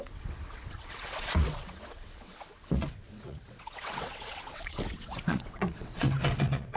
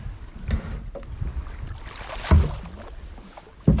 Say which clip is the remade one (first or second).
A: first